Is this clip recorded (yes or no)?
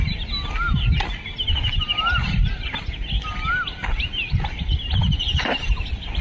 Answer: yes